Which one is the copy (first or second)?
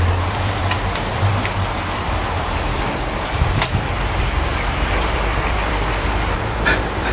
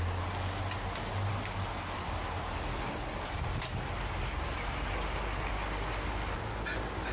first